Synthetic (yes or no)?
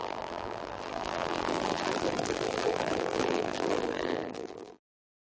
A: yes